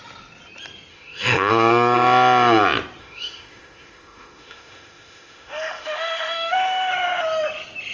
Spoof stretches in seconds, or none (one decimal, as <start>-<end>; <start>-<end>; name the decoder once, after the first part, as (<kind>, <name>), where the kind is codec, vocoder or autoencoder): 0.9-1.5 (autoencoder, DAC-VAE); 3.0-6.9